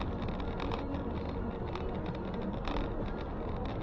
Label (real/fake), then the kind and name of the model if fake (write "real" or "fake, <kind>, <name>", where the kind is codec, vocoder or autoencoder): real